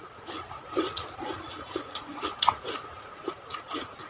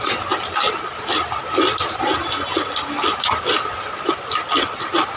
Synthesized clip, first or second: first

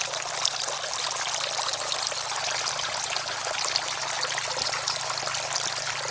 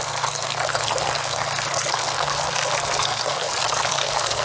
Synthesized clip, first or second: second